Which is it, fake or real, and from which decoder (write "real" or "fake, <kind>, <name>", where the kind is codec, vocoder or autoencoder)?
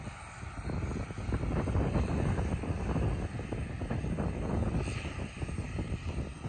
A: real